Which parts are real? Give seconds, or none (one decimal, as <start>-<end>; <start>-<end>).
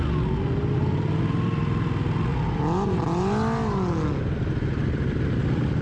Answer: 0.0-5.8